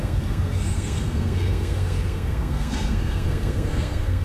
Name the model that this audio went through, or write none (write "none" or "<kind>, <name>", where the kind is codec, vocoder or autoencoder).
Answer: codec, SNAC